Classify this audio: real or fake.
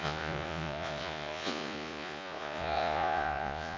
fake